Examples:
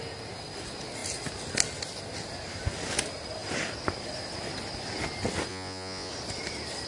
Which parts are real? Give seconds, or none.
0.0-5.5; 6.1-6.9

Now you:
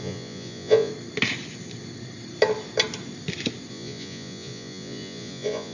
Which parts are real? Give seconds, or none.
0.9-3.7

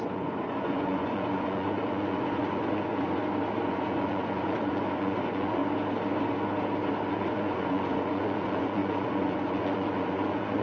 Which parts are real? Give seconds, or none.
3.2-3.7; 5.6-7.1

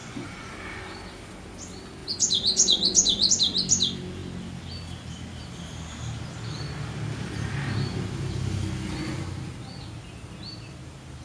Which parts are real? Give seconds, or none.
0.5-2.0; 3.3-11.2

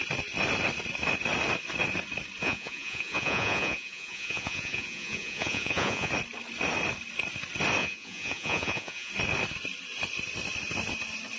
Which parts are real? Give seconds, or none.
0.0-2.4; 6.1-7.8; 9.1-11.4

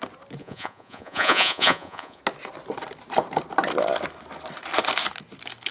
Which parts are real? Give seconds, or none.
0.0-0.4; 2.2-5.7